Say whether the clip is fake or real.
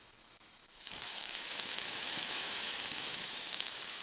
fake